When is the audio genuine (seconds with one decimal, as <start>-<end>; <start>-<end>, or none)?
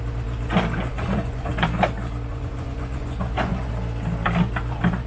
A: 0.0-0.9; 1.5-2.3; 3.7-5.1